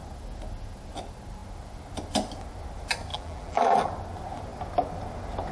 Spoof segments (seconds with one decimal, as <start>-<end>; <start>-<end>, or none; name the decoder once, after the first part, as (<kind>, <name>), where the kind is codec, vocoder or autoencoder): 3.1-3.9 (vocoder, BigVGAN v2)